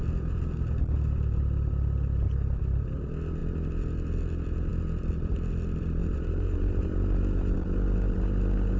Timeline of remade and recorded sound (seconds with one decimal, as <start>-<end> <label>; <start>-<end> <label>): 0.0-6.0 recorded; 6.0-6.9 remade; 6.9-8.8 recorded